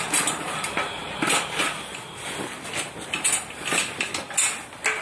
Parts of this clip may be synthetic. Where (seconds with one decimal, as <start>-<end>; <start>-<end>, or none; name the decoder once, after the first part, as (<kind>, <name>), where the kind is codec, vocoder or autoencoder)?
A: none